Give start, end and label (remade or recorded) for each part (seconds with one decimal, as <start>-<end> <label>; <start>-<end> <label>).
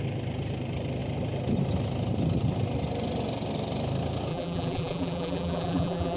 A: 0.0-4.3 recorded; 4.3-6.2 remade